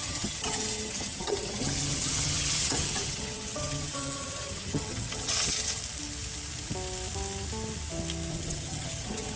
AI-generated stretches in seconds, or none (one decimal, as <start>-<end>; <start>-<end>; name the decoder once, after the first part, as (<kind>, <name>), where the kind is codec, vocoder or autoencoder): 0.0-5.8 (vocoder, HiFi-GAN); 8.3-9.4